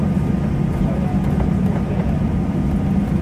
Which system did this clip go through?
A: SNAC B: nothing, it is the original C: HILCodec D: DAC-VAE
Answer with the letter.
B